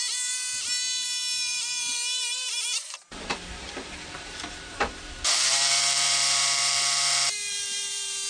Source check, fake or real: fake